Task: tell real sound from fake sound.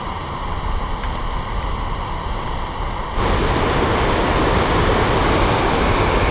real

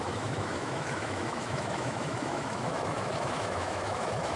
fake